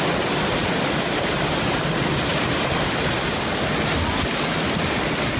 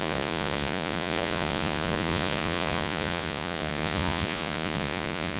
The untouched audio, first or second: first